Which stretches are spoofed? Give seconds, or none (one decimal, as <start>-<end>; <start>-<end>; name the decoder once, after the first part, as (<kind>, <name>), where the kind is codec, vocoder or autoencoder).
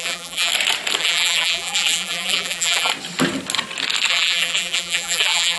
0.0-0.5 (vocoder, BigVGAN v2); 1.0-2.9; 4.1-5.6